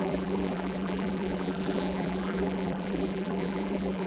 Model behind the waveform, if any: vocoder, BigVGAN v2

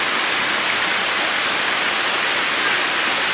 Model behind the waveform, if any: none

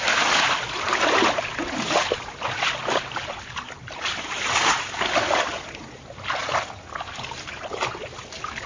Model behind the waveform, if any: none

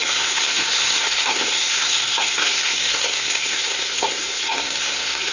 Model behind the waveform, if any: codec, SNAC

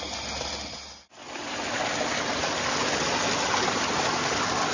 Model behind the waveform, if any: none